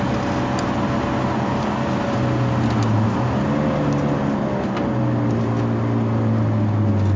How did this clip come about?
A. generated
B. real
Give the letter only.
B